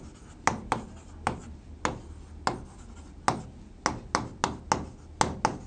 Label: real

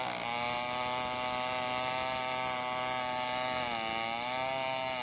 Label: real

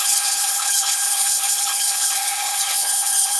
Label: fake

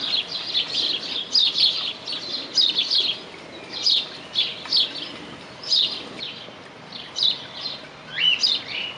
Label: real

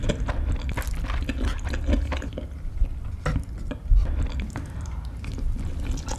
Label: real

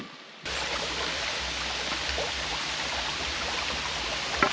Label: real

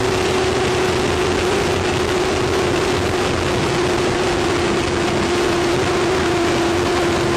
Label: real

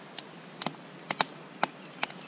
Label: real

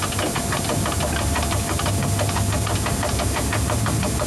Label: real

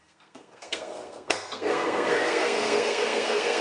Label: fake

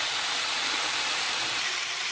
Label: fake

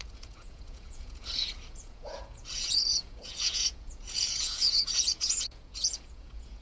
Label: fake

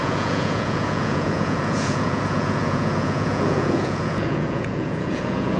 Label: fake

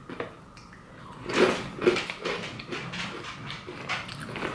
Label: real